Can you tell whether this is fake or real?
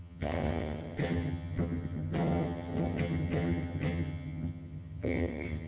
fake